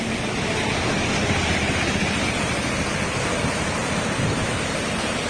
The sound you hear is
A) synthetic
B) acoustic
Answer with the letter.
B